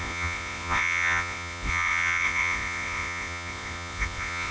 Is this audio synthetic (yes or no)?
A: yes